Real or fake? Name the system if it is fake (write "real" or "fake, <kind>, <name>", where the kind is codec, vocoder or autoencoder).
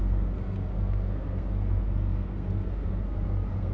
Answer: fake, codec, SNAC